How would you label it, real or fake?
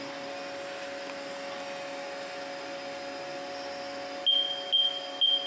real